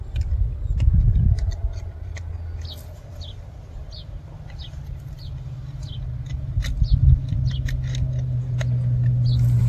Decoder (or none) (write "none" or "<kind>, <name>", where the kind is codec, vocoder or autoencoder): none